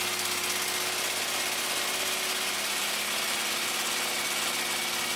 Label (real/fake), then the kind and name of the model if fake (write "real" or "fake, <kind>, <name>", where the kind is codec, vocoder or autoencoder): real